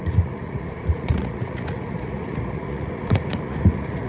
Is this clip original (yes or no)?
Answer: no